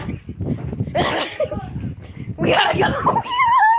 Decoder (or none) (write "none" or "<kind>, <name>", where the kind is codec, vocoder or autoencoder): none